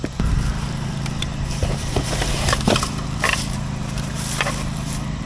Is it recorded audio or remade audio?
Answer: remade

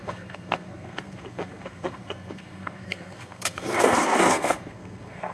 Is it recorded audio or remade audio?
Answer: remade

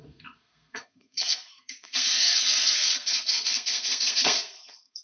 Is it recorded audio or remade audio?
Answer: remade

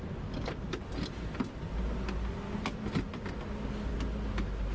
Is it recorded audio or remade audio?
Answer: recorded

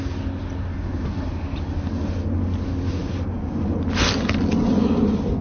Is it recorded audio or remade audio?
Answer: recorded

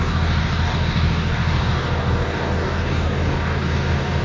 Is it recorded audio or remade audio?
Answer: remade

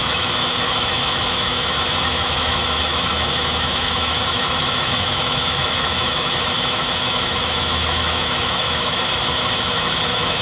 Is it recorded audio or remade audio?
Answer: remade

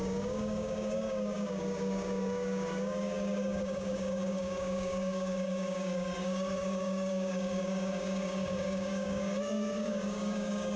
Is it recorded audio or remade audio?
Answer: remade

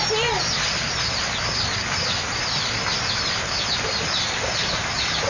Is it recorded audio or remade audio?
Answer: recorded